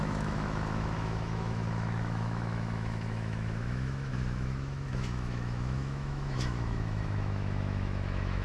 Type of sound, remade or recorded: remade